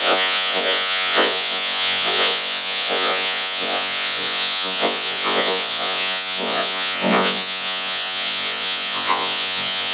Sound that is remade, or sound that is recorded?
remade